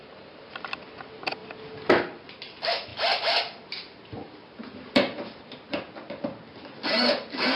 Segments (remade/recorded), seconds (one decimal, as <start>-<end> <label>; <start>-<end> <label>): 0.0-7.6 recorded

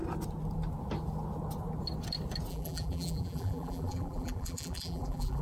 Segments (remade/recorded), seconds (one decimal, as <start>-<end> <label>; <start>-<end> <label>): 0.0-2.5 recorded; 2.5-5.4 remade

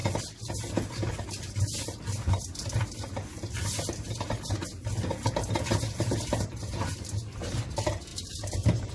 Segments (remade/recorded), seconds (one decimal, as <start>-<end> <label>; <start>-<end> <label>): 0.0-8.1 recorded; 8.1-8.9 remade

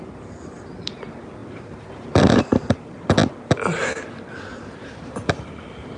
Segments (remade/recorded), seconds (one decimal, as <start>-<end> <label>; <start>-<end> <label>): 0.0-1.4 recorded; 1.4-2.7 remade; 2.7-4.5 recorded; 4.5-5.6 remade; 5.6-6.0 recorded